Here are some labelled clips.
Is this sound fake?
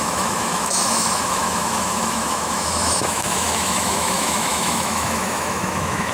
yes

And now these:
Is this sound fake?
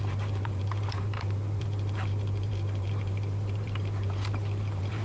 yes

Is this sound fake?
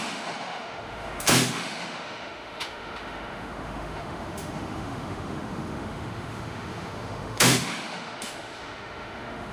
yes